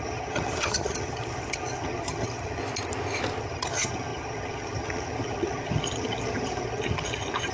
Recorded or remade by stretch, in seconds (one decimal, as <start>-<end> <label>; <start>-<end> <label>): 0.0-2.6 remade; 2.6-3.4 recorded; 3.4-7.5 remade